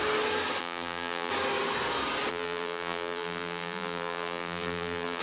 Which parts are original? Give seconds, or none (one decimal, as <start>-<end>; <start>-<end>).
0.0-0.6; 1.3-2.3